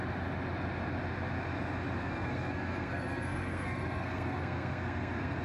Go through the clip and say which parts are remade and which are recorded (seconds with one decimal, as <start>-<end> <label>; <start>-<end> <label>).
0.0-2.0 recorded; 2.0-5.4 remade